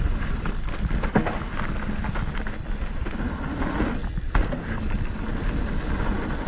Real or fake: real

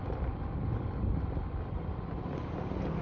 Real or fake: real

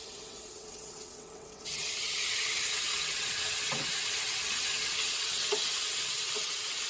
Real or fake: fake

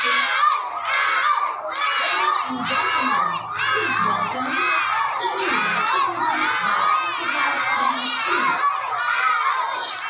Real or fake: real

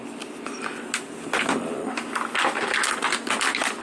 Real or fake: real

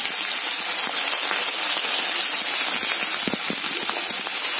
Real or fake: real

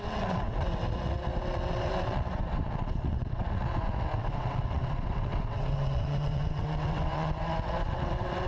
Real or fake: fake